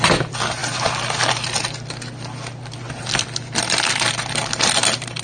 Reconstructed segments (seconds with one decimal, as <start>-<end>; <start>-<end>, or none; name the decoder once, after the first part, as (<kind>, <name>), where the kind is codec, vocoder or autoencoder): none